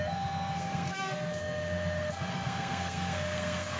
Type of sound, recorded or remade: remade